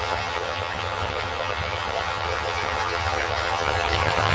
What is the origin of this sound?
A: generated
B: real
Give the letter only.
A